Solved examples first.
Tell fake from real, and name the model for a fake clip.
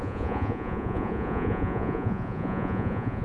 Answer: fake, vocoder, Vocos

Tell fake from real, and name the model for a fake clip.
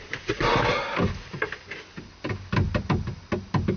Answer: real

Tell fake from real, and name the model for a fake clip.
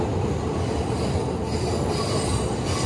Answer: real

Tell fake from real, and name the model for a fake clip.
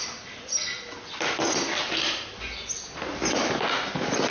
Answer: real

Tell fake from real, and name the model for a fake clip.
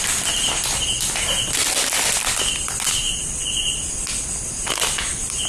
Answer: real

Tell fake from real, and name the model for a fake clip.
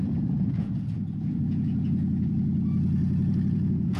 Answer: fake, vocoder, Vocos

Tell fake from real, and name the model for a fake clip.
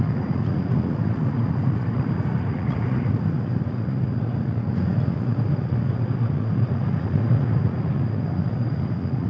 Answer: fake, vocoder, Vocos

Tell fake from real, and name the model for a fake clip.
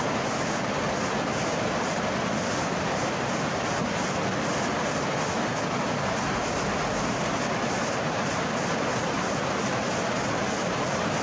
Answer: real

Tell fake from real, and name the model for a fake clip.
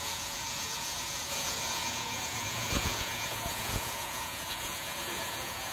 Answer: fake, vocoder, Vocos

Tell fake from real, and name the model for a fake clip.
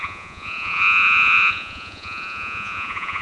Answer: fake, vocoder, Vocos